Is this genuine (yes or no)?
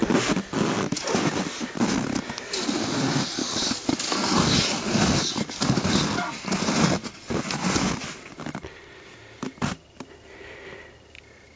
yes